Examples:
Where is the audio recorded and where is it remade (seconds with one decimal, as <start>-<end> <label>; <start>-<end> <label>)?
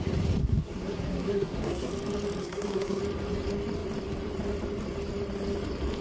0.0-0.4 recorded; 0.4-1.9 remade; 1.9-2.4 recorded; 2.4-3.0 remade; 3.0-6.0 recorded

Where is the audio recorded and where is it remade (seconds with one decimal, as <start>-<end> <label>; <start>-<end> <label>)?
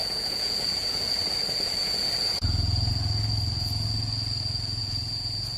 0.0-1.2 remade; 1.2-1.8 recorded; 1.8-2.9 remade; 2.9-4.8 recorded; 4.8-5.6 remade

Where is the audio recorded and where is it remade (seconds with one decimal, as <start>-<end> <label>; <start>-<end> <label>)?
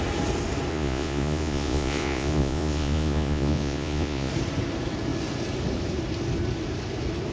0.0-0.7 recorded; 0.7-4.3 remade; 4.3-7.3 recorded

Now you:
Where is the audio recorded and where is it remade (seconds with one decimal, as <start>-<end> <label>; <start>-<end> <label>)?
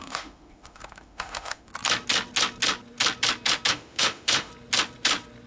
0.0-1.7 remade; 1.7-3.7 recorded; 3.7-4.5 remade; 4.5-5.5 recorded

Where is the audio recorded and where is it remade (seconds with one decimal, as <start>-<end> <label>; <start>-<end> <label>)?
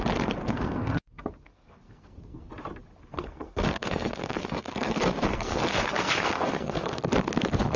0.0-0.4 recorded; 0.4-2.5 remade; 2.5-3.1 recorded; 3.1-7.0 remade; 7.0-7.8 recorded